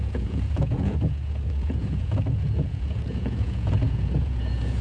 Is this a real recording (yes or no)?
no